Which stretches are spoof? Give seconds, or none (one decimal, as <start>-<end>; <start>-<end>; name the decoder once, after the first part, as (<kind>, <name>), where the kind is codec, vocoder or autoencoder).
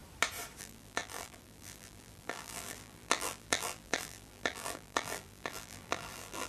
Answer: 0.6-6.5 (vocoder, BigVGAN v2)